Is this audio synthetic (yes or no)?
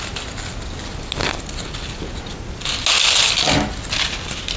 no